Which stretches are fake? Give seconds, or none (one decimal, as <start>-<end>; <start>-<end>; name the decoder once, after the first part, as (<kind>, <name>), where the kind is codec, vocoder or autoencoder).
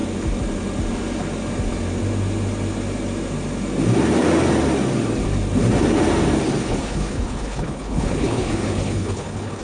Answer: 6.6-9.6 (codec, HILCodec)